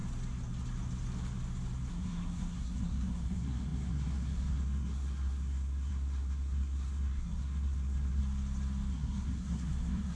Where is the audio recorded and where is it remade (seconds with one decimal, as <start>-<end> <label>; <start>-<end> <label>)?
0.0-1.9 recorded; 1.9-8.2 remade; 8.2-8.9 recorded; 8.9-10.2 remade